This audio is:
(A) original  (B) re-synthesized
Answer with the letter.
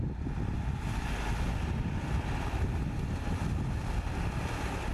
A